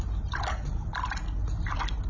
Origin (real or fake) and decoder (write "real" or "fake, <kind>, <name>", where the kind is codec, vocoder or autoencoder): real